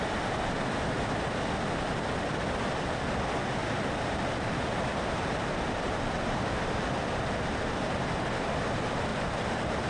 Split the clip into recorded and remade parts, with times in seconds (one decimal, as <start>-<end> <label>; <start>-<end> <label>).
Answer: 0.0-3.6 recorded; 3.6-6.5 remade; 6.5-9.1 recorded; 9.1-9.9 remade